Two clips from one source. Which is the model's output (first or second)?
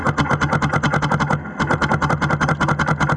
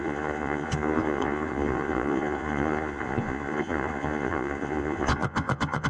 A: second